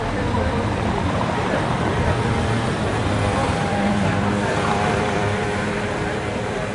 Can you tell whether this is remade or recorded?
remade